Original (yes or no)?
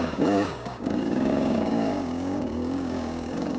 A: no